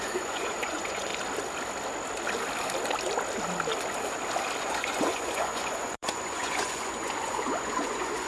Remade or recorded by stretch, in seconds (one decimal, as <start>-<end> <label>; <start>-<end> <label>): 0.0-1.1 remade; 1.1-4.6 recorded; 4.6-8.3 remade